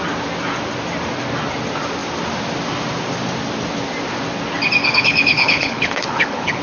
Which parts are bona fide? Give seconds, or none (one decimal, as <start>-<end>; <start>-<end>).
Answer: 0.0-4.8